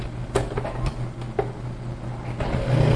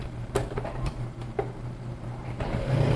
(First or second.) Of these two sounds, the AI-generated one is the second